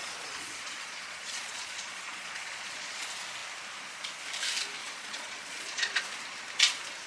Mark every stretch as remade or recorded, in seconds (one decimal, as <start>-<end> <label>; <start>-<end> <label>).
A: 0.0-3.0 remade; 3.0-4.8 recorded; 4.8-6.0 remade; 6.0-7.1 recorded